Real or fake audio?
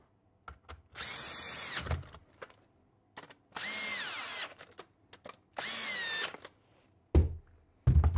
real